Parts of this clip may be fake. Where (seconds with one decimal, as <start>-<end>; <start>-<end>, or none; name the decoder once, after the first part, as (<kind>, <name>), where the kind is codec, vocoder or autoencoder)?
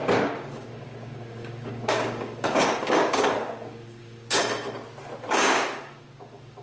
0.0-4.4 (codec, DAC); 5.3-6.6